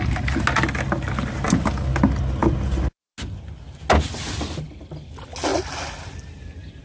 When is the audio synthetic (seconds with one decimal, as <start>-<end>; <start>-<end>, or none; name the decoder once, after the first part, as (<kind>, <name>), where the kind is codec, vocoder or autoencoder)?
none